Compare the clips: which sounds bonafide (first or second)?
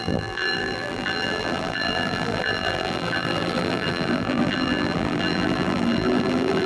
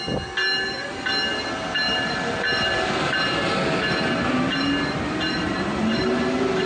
second